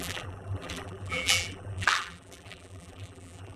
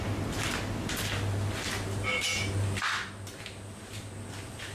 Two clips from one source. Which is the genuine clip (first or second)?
second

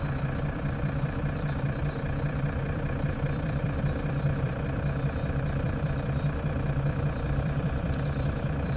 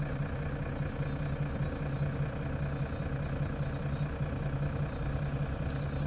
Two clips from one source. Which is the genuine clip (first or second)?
second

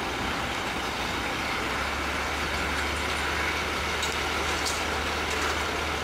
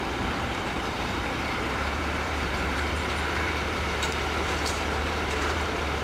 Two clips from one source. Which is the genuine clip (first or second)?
first